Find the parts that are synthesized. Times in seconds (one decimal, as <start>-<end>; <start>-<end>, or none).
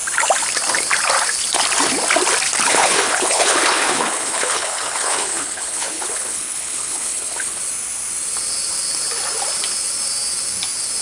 2.7-7.6